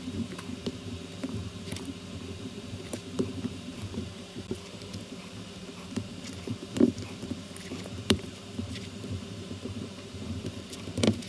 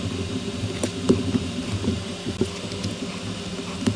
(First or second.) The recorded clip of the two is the second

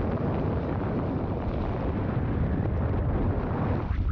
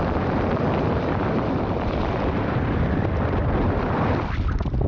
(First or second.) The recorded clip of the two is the first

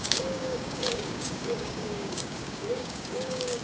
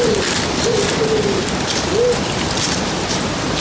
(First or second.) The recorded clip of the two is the second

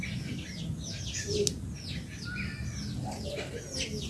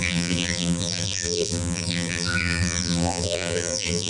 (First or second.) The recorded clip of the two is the first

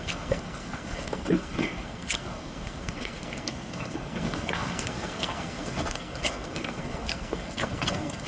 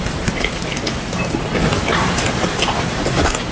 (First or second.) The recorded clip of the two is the second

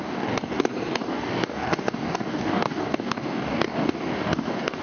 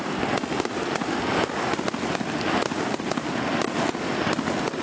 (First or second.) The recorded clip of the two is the second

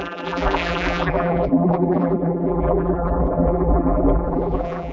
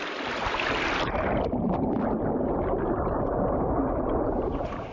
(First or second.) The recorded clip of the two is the second